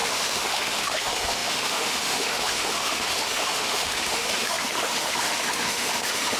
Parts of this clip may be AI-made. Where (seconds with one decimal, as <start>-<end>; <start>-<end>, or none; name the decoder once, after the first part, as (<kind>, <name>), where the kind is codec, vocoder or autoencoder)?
0.0-6.4 (autoencoder, DAC-VAE)